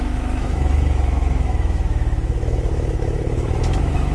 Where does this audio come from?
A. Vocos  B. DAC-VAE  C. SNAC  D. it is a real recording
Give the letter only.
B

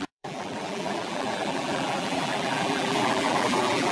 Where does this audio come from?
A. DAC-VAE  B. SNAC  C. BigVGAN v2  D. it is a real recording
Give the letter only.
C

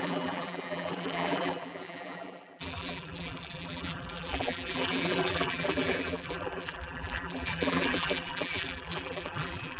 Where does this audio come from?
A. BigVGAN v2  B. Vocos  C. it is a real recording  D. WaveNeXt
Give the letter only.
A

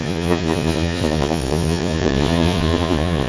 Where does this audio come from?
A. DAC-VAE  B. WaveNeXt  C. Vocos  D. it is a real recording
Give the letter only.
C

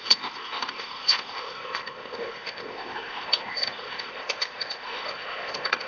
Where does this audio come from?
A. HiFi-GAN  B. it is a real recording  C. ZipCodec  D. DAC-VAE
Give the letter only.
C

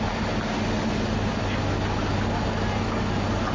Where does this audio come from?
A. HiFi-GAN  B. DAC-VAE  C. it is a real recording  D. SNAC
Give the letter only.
C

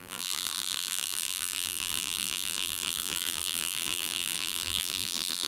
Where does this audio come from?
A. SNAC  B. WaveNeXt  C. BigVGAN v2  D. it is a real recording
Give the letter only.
C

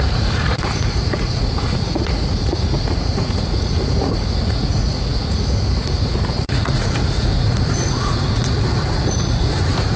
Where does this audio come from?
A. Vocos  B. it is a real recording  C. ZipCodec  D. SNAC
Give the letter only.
A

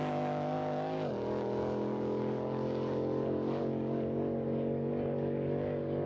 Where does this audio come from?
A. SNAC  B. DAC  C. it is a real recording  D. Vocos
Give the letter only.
B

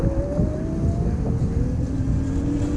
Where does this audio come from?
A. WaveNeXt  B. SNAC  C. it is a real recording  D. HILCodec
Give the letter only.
C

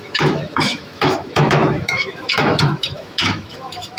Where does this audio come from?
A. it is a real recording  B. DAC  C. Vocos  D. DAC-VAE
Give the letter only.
D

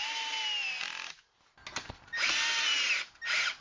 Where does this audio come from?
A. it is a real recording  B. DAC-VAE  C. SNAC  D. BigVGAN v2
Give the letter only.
A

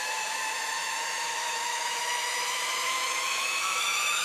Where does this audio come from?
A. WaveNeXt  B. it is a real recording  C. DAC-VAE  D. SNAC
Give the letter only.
C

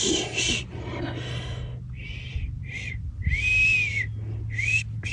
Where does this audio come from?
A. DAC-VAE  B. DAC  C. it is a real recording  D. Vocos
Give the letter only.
C